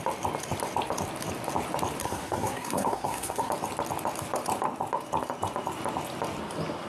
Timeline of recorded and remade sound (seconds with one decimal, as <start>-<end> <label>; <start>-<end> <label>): 0.0-2.0 recorded; 2.0-3.5 remade; 3.5-6.9 recorded